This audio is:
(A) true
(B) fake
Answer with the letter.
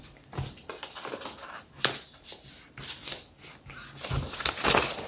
A